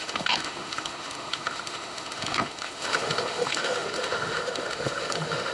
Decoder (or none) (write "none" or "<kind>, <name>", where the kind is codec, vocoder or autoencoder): autoencoder, DAC-VAE